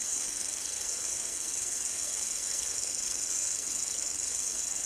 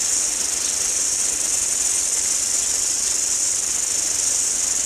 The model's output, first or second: first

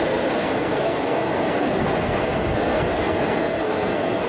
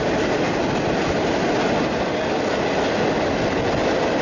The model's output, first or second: first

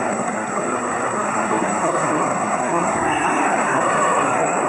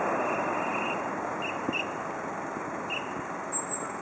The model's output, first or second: first